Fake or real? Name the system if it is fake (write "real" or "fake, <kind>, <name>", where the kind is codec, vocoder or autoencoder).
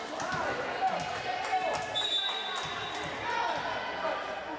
real